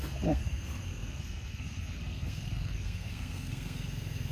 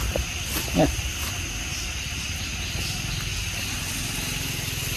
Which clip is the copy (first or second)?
first